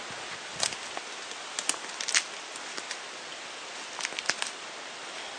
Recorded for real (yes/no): yes